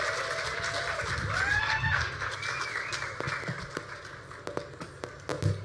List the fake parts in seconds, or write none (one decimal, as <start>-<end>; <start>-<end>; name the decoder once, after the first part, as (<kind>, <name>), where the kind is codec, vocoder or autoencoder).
1.6-2.3 (codec, SNAC)